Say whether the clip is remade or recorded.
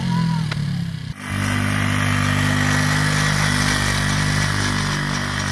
recorded